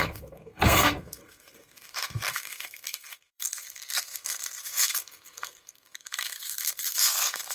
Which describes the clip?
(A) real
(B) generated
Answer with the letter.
B